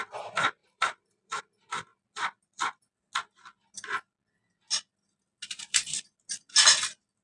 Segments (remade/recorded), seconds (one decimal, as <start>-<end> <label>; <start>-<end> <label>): 0.0-0.6 recorded; 0.6-1.4 remade; 1.4-7.2 recorded